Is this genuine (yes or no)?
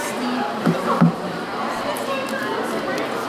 yes